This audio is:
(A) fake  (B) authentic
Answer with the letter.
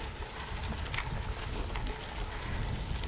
B